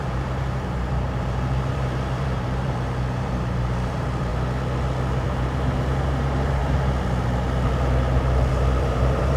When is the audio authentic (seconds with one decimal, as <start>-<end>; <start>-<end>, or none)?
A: 4.3-5.1; 6.6-8.5